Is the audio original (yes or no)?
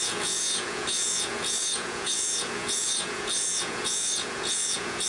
no